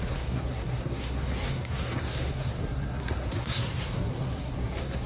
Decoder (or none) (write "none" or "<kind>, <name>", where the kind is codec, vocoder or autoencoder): codec, SNAC